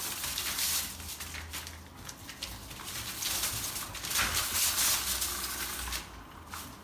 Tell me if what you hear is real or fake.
real